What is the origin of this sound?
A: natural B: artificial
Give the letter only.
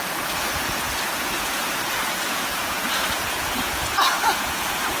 B